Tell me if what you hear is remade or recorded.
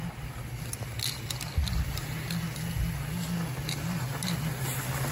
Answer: recorded